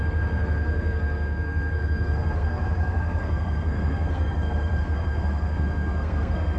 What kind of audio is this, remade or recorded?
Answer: remade